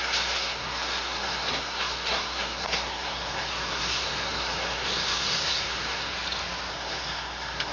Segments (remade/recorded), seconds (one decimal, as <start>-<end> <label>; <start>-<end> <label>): 0.0-6.1 remade; 6.1-6.7 recorded; 6.7-7.7 remade